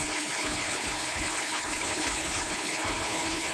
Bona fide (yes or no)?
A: no